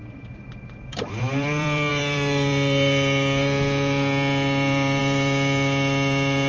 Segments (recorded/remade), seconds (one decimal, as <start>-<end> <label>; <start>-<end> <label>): 0.0-6.5 remade